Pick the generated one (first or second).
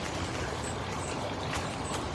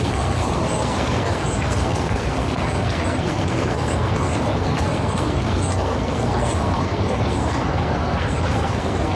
second